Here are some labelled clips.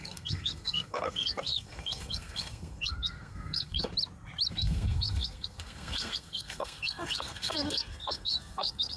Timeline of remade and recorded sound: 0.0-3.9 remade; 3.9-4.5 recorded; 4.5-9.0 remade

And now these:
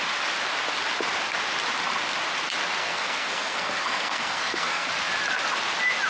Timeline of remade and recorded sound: 0.0-2.8 recorded; 2.8-4.9 remade; 4.9-6.1 recorded